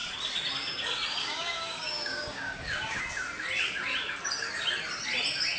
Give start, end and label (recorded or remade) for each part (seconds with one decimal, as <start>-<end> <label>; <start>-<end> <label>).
0.0-1.2 recorded; 1.2-3.0 remade; 3.0-5.6 recorded